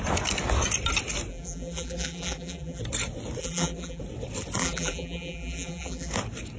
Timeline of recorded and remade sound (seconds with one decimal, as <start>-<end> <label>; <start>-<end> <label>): 0.0-1.3 recorded; 1.3-2.8 remade; 2.8-3.4 recorded; 3.4-4.0 remade; 4.0-4.6 recorded; 4.6-6.1 remade; 6.1-6.6 recorded